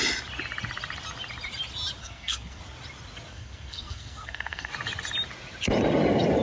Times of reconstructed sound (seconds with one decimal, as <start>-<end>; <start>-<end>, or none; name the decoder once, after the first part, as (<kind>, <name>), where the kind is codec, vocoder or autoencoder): 2.0-2.6 (codec, SNAC); 3.3-4.7